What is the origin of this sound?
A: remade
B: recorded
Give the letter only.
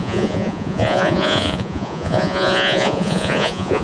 A